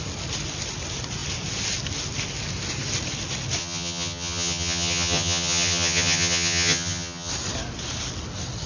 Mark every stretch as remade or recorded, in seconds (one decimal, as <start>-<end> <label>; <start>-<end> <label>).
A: 0.0-3.6 recorded; 3.6-7.3 remade; 7.3-8.7 recorded